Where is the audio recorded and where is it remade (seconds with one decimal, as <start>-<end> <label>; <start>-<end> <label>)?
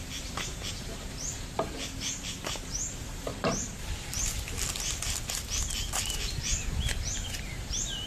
0.0-8.1 remade